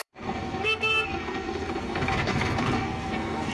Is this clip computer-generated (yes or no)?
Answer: yes